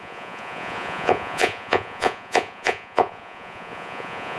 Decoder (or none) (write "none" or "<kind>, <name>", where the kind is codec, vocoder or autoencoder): vocoder, Vocos